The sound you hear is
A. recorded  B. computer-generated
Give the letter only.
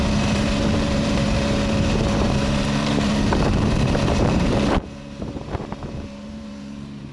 B